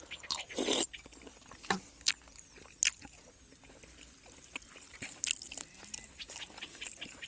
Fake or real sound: real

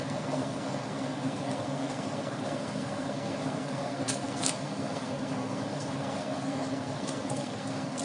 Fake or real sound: fake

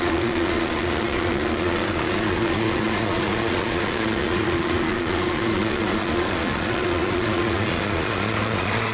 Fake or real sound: fake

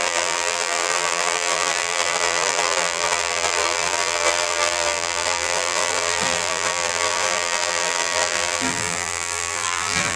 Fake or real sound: fake